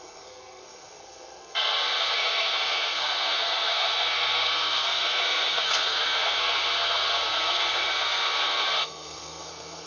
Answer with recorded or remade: remade